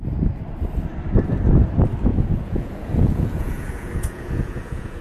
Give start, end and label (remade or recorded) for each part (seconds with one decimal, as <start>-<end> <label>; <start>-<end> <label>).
0.0-2.1 recorded; 2.1-5.0 remade

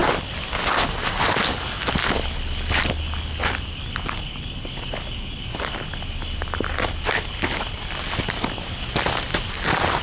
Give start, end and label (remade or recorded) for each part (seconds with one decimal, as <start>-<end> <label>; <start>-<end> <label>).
0.0-10.0 recorded

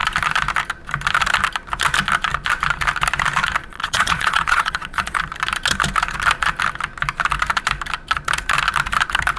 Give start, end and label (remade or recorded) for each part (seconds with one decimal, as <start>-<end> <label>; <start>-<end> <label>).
0.0-3.6 recorded; 3.6-5.2 remade; 5.2-9.4 recorded

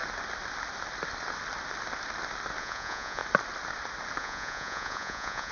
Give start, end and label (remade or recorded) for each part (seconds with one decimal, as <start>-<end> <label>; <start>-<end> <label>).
0.0-2.6 recorded; 2.6-3.2 remade; 3.2-4.2 recorded; 4.2-5.5 remade

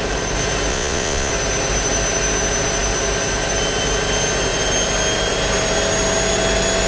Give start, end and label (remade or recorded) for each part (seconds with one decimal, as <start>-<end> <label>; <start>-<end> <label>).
0.0-0.7 recorded; 0.7-1.3 remade; 1.3-6.9 recorded

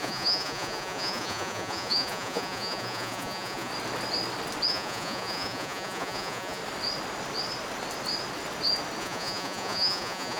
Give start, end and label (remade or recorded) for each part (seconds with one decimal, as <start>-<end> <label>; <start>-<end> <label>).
0.0-3.7 remade; 3.7-4.7 recorded; 4.7-6.6 remade; 6.6-9.0 recorded; 9.0-10.4 remade